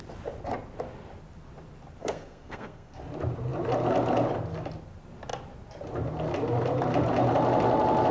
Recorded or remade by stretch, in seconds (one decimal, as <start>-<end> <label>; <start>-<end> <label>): 0.0-2.0 recorded; 2.0-3.0 remade; 3.0-8.1 recorded